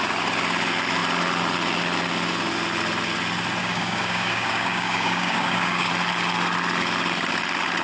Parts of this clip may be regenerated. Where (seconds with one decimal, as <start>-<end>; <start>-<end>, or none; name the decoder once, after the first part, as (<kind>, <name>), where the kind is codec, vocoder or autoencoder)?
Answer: 3.6-5.9 (codec, DAC)